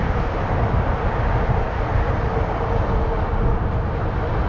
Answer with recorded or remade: recorded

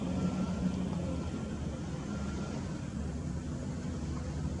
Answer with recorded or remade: recorded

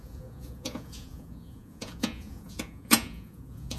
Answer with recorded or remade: remade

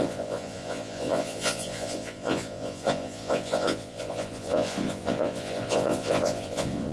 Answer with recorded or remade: remade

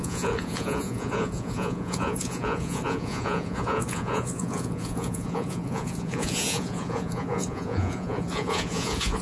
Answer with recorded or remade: remade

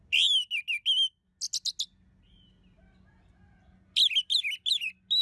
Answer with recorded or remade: recorded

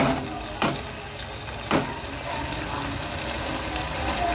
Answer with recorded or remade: recorded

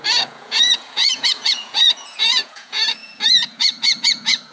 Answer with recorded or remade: remade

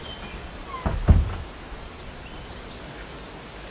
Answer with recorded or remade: recorded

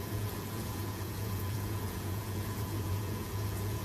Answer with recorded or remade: remade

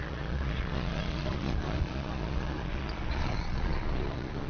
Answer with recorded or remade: remade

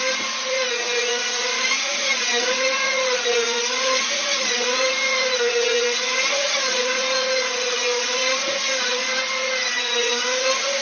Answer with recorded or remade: remade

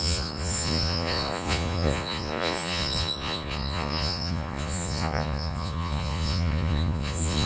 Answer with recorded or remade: remade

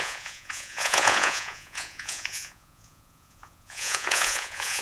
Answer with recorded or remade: remade